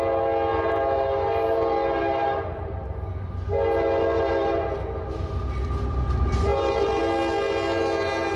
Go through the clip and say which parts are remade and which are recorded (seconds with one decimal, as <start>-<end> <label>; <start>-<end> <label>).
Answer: 0.0-0.5 recorded; 0.5-2.7 remade; 2.7-6.5 recorded; 6.5-7.0 remade; 7.0-8.4 recorded